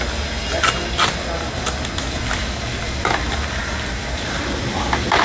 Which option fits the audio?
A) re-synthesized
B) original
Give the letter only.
B